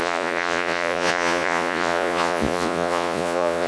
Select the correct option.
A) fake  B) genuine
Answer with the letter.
A